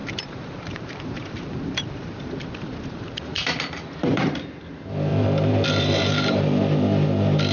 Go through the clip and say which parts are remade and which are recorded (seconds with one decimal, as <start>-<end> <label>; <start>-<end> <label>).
0.0-4.5 remade; 4.5-5.1 recorded; 5.1-6.6 remade; 6.6-7.5 recorded